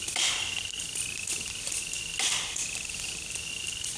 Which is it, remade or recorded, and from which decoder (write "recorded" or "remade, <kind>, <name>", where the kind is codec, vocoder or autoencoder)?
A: recorded